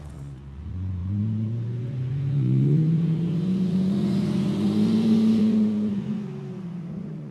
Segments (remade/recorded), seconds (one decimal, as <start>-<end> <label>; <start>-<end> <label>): 0.0-7.3 remade